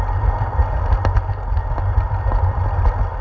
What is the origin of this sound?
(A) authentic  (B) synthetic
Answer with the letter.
A